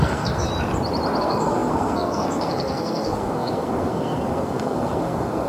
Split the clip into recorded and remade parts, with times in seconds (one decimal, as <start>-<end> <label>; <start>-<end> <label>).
0.0-0.5 remade; 0.5-1.2 recorded; 1.2-5.5 remade